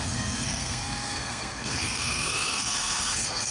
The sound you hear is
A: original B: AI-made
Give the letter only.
B